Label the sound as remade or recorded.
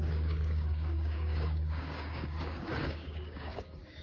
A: remade